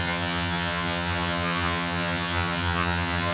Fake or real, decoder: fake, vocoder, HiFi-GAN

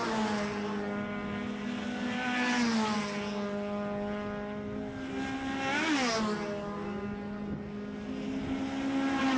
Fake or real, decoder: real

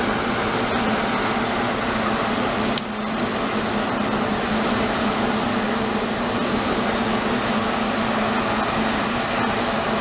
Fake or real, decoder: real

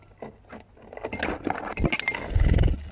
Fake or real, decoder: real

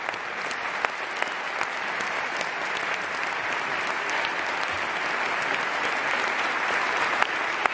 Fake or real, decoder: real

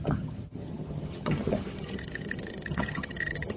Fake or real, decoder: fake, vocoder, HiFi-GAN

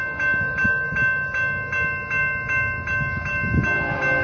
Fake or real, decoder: real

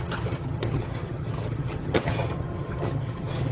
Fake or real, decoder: fake, vocoder, HiFi-GAN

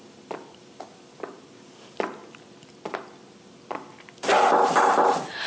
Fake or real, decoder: real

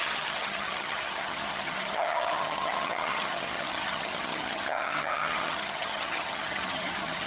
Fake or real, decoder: fake, vocoder, HiFi-GAN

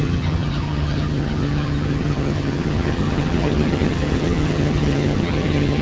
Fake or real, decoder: fake, vocoder, HiFi-GAN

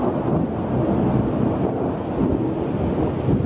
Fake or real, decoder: real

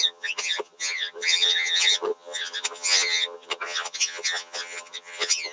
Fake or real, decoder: fake, vocoder, HiFi-GAN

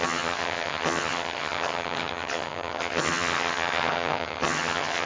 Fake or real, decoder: fake, vocoder, HiFi-GAN